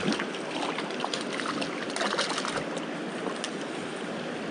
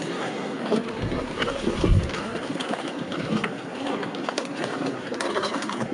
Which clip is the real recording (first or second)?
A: first